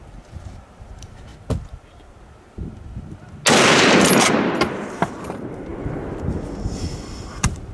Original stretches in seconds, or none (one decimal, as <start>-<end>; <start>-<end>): 1.3-4.2; 5.7-7.3